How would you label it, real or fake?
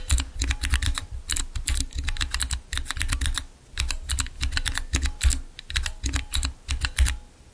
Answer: real